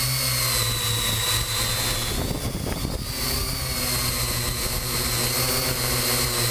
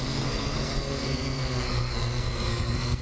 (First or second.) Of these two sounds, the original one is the first